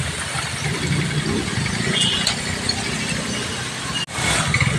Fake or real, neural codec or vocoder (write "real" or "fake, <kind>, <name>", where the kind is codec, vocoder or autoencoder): real